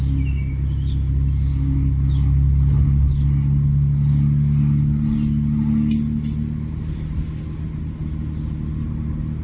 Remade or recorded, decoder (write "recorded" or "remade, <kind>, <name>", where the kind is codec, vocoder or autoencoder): recorded